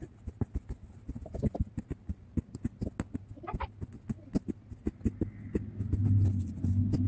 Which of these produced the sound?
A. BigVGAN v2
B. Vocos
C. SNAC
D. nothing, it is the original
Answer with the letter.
D